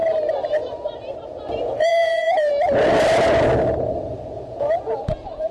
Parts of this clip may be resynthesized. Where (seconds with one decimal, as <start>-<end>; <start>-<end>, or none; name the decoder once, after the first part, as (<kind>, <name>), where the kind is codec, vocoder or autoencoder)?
1.7-2.5 (vocoder, Vocos); 4.3-5.5